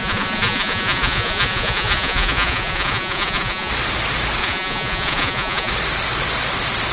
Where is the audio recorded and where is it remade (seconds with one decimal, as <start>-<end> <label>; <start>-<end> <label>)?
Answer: 0.0-3.7 remade; 3.7-4.4 recorded; 4.4-5.7 remade; 5.7-6.9 recorded